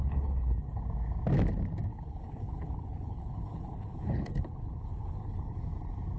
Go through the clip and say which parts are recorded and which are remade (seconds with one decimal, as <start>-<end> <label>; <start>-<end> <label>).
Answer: 0.0-0.8 remade; 0.8-1.9 recorded; 1.9-5.6 remade; 5.6-6.2 recorded